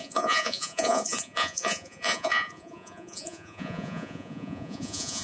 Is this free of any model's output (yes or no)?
no